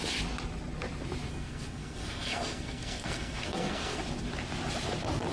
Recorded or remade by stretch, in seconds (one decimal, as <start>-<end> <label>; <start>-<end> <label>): 0.0-1.3 recorded; 1.3-4.0 remade; 4.0-5.3 recorded